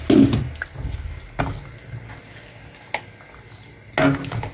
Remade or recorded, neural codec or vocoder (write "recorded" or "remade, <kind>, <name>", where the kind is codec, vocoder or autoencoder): recorded